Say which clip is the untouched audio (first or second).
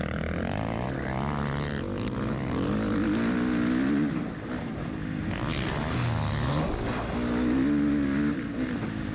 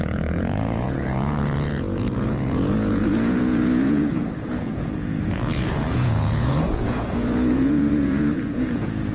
first